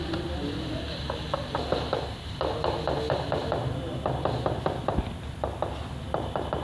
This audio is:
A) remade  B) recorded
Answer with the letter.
B